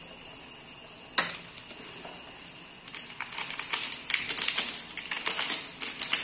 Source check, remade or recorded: recorded